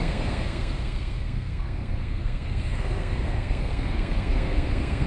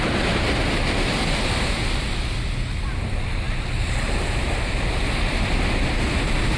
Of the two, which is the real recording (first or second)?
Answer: second